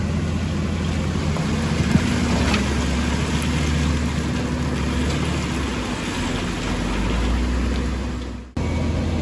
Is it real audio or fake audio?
real